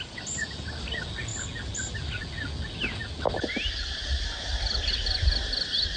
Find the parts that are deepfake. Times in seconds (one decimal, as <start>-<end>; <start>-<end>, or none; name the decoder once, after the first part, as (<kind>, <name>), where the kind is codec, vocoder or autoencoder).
none